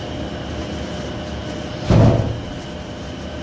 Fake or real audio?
real